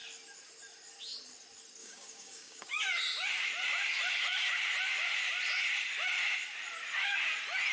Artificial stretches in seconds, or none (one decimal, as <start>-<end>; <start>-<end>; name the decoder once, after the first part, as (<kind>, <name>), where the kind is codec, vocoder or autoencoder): 1.8-2.8 (codec, DAC)